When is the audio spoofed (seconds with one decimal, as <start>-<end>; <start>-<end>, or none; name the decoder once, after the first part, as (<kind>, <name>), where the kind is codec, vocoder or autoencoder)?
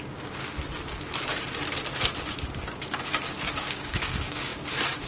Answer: 0.0-0.4 (codec, DAC); 3.5-5.1